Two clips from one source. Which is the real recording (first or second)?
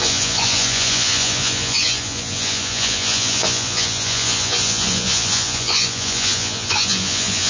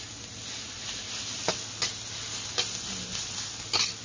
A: second